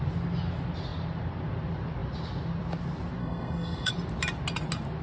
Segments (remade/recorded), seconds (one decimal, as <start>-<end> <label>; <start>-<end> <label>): 0.0-3.2 recorded; 3.2-3.9 remade; 3.9-5.0 recorded